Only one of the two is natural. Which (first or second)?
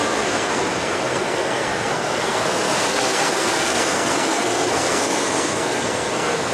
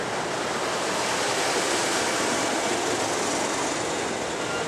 second